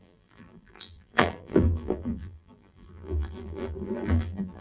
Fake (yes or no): yes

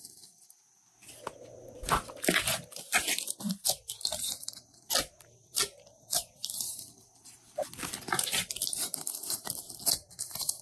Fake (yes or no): no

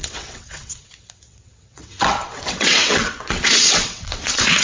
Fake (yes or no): yes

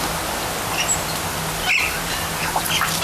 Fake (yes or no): no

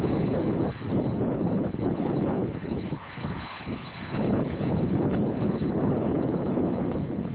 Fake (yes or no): yes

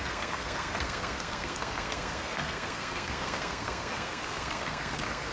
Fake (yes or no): yes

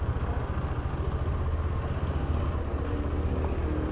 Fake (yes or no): no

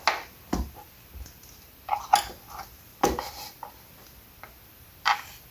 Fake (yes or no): no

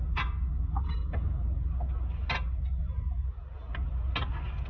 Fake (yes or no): no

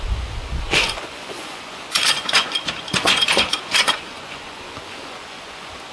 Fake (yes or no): yes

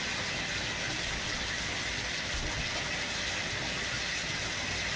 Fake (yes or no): no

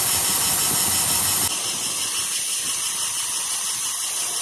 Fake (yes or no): no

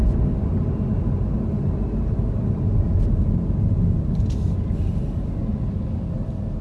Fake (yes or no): no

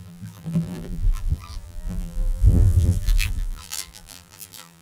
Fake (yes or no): yes